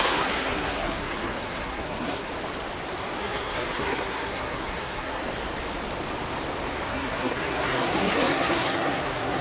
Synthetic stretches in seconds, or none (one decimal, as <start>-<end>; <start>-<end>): 0.0-2.3; 3.2-5.2; 6.9-9.4